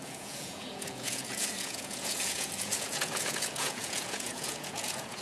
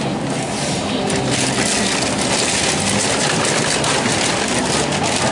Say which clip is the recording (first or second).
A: second